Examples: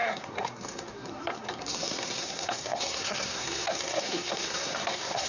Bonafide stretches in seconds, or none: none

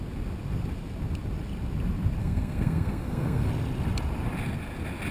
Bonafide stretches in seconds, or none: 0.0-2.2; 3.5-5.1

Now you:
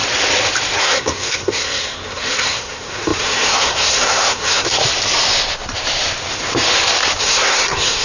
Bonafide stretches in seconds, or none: 0.0-0.8; 4.8-7.2